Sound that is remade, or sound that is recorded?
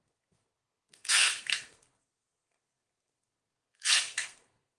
remade